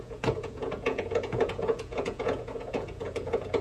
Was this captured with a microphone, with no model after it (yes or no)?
no